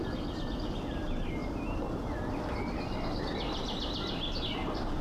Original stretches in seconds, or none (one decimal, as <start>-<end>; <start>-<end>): 0.0-5.0